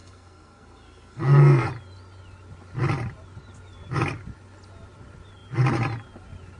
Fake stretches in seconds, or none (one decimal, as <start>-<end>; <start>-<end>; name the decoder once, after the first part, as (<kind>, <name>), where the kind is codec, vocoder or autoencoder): 0.0-1.7 (codec, SNAC)